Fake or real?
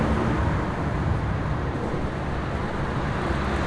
real